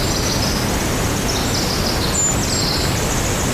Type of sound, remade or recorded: recorded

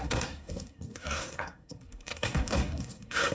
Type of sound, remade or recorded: remade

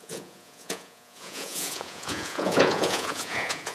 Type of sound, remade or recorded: remade